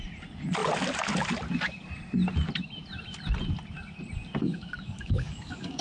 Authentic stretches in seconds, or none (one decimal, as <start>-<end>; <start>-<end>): 0.0-4.4